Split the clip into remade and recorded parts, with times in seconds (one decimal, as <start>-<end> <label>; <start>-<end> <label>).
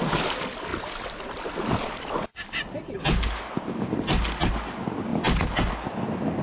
0.0-6.4 recorded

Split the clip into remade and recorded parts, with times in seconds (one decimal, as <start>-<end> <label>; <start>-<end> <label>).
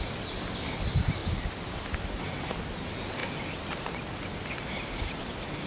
0.0-5.7 recorded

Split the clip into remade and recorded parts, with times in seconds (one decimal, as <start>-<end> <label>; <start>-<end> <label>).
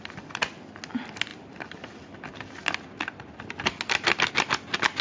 0.0-5.0 recorded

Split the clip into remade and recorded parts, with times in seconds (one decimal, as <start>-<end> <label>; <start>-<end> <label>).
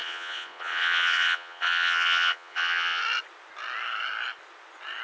0.0-3.0 remade; 3.0-5.0 recorded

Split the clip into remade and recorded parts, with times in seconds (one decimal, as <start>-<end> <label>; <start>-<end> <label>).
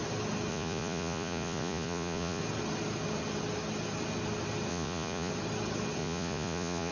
0.0-0.5 recorded; 0.5-2.4 remade; 2.4-4.7 recorded; 4.7-5.3 remade; 5.3-6.0 recorded; 6.0-6.9 remade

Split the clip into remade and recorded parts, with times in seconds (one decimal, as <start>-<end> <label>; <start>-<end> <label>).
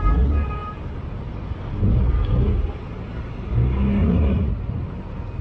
0.0-4.0 recorded; 4.0-4.5 remade; 4.5-5.4 recorded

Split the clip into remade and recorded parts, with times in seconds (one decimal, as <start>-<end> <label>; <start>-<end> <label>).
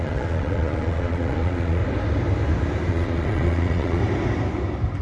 0.0-1.8 remade; 1.8-2.9 recorded; 2.9-4.0 remade; 4.0-5.0 recorded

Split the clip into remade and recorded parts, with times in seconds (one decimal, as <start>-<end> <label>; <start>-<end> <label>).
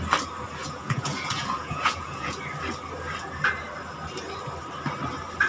0.0-0.6 recorded; 0.6-2.4 remade; 2.4-5.5 recorded